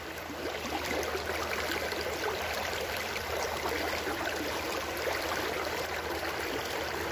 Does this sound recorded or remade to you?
recorded